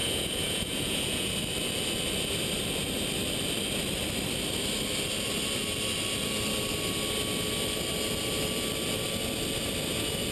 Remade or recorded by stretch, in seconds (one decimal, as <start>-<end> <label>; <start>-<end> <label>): 0.0-1.3 remade; 1.3-10.3 recorded